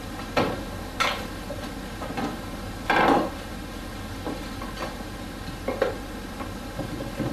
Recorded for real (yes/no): yes